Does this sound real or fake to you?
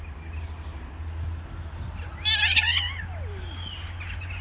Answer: real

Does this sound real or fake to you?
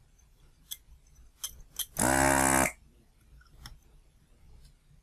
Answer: real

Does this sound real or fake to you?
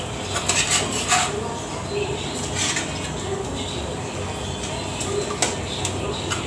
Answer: fake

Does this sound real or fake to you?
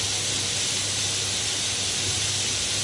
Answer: real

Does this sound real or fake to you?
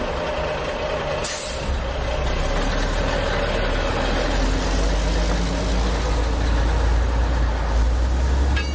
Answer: real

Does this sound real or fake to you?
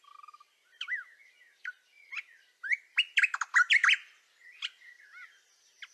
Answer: real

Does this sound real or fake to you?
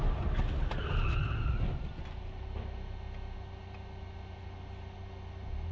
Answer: real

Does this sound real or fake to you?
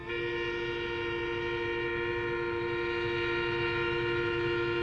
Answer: real